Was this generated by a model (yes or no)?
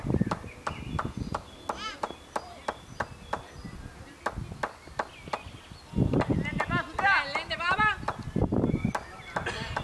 no